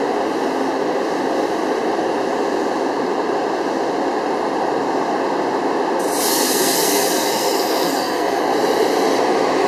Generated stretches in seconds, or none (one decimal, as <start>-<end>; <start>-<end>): 6.3-8.4